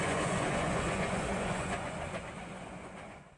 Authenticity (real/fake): fake